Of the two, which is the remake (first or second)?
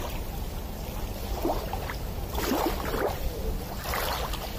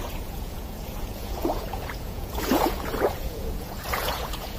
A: second